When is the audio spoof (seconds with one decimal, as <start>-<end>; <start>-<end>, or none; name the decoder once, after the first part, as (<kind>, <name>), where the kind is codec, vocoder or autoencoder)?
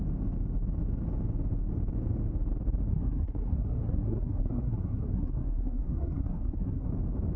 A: 2.9-6.9 (codec, SNAC)